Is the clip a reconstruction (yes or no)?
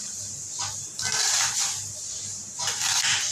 no